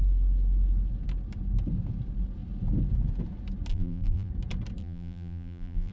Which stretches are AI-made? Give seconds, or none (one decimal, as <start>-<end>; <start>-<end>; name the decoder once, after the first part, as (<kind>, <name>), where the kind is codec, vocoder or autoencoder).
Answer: 3.7-4.3 (vocoder, BigVGAN v2); 4.8-5.9